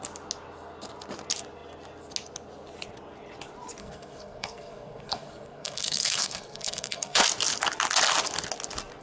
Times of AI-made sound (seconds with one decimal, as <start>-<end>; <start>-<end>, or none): 3.8-7.2